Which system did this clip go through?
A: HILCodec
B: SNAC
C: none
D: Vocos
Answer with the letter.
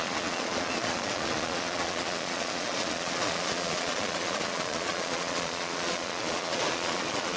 D